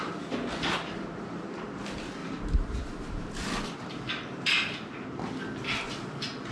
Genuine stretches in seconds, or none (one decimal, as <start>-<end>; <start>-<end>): 0.0-6.5